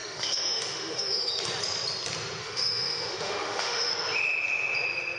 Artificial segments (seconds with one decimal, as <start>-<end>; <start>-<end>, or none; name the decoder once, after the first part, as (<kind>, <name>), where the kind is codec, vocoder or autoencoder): 0.0-1.3 (autoencoder, DAC-VAE); 2.4-3.9